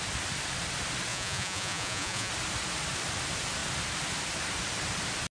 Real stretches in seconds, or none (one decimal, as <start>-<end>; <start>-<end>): 0.0-1.1; 2.3-5.3